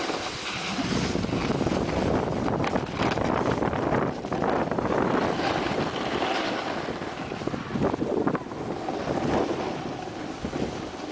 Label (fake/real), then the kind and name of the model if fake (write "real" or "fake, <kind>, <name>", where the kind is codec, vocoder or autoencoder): real